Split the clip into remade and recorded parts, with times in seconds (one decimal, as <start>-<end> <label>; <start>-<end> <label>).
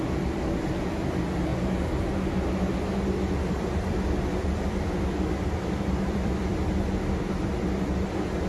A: 0.0-1.5 remade; 1.5-3.5 recorded; 3.5-6.5 remade; 6.5-7.2 recorded; 7.2-8.5 remade